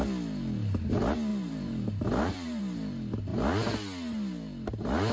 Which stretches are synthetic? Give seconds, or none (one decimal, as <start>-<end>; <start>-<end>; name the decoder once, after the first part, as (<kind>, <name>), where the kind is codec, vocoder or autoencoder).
1.3-2.6 (vocoder, BigVGAN v2)